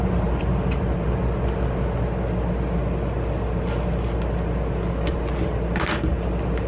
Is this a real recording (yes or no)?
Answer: yes